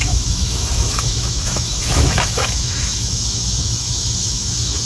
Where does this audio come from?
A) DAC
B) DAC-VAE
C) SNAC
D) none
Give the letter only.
B